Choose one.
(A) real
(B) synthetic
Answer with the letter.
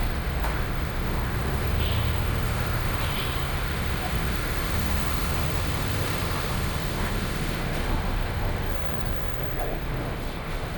B